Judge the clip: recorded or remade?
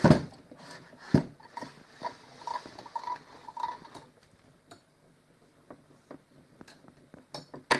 recorded